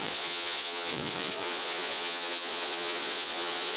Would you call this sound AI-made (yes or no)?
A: yes